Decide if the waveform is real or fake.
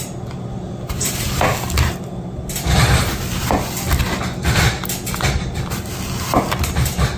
real